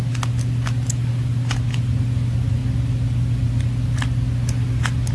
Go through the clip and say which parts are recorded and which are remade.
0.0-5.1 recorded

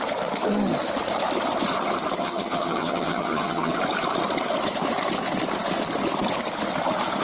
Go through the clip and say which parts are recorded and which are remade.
0.0-2.2 recorded; 2.2-3.7 remade; 3.7-7.2 recorded

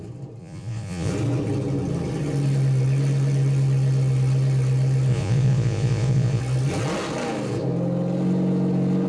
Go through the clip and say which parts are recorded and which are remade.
0.0-0.4 recorded; 0.4-1.1 remade; 1.1-5.1 recorded; 5.1-6.4 remade; 6.4-9.1 recorded

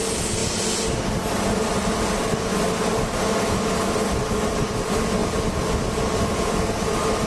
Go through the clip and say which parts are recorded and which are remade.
0.0-7.3 recorded

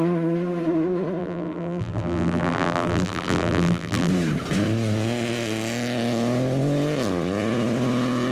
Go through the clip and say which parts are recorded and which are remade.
0.0-1.2 recorded; 1.2-4.1 remade; 4.1-8.3 recorded

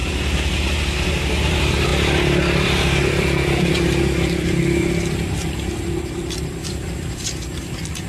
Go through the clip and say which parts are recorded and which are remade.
0.0-0.8 recorded; 0.8-8.1 remade